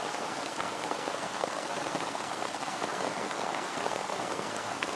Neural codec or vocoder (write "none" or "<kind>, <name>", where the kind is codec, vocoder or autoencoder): codec, SNAC